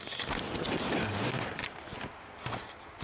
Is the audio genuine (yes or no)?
yes